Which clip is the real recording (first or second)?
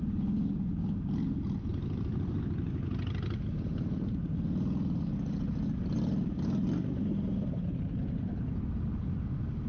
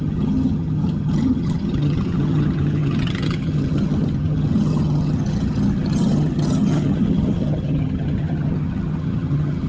first